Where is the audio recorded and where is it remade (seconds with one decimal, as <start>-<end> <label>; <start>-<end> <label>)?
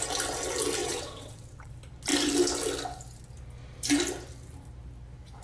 0.0-0.8 recorded; 0.8-1.7 remade; 1.7-5.4 recorded